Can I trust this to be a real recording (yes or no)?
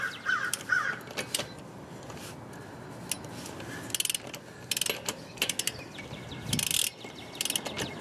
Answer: yes